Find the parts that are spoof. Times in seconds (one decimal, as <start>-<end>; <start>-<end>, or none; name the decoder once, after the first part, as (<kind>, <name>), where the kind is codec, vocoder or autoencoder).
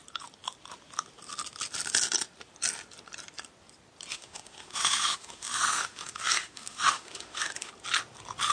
4.1-7.7 (autoencoder, DAC-VAE)